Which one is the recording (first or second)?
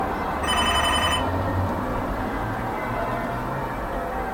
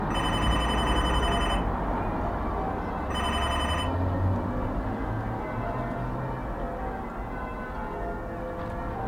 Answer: second